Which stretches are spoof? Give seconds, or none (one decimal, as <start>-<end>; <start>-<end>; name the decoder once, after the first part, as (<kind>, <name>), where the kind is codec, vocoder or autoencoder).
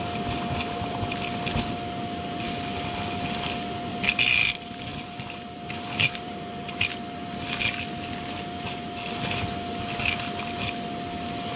3.9-4.5 (vocoder, BigVGAN v2); 4.9-6.4